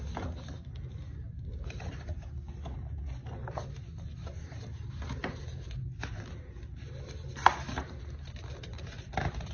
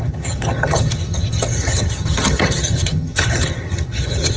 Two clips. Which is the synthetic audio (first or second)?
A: second